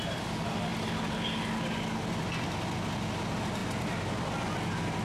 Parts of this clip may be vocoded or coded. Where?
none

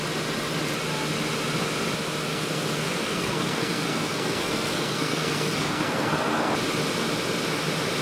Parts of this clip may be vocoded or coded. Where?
2.3-6.5 (codec, SNAC)

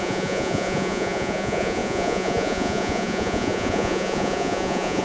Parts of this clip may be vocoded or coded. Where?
0.0-5.0 (vocoder, Vocos)

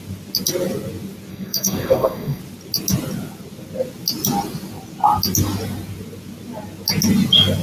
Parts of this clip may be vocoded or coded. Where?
1.3-2.4 (codec, SNAC)

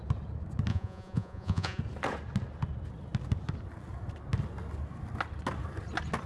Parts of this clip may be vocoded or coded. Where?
0.7-1.8 (vocoder, Vocos)

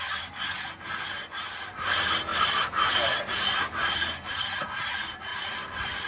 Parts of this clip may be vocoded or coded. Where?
none

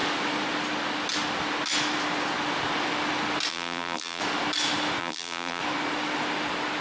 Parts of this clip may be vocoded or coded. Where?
3.5-4.2 (vocoder, BigVGAN v2); 5.0-5.6

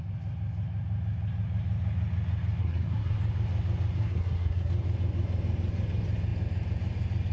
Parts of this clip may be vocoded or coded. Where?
2.6-3.2 (codec, SNAC); 4.0-4.7